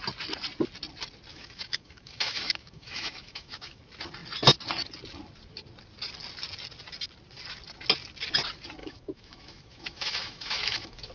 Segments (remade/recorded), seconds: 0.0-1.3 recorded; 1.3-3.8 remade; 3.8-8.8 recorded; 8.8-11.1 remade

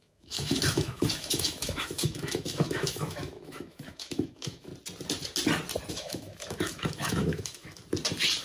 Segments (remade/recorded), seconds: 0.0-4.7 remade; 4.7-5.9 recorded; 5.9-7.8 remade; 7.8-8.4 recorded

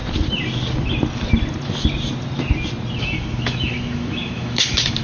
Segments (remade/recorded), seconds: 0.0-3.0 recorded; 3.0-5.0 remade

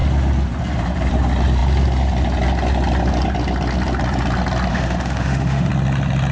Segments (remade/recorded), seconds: 0.0-4.7 recorded; 4.7-5.7 remade; 5.7-6.3 recorded

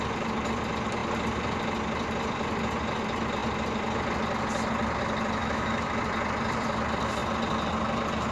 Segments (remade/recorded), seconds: 0.0-5.4 recorded; 5.4-6.0 remade; 6.0-8.3 recorded

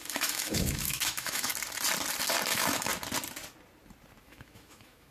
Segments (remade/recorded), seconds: 0.0-1.5 remade; 1.5-2.5 recorded; 2.5-2.9 remade; 2.9-4.2 recorded; 4.2-5.1 remade

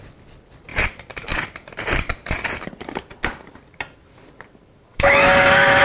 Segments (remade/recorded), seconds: 0.0-4.9 recorded; 4.9-5.8 remade